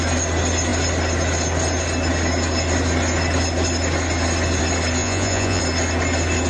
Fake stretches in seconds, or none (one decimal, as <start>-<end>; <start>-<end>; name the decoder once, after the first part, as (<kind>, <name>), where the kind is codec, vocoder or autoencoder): 5.0-5.6 (vocoder, Vocos)